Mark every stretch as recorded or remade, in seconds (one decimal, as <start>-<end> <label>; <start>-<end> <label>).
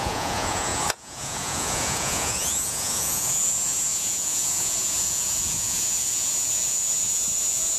0.0-7.8 remade